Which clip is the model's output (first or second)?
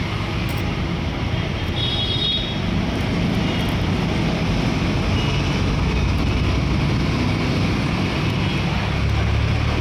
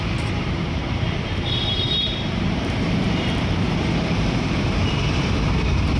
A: second